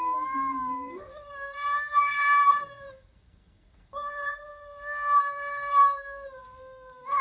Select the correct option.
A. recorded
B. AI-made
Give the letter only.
B